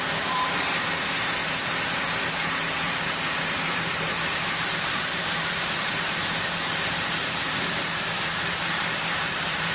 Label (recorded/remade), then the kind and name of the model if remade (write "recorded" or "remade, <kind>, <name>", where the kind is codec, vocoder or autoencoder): remade, vocoder, BigVGAN v2